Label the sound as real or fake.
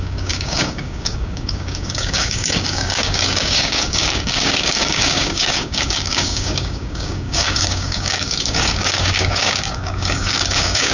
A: fake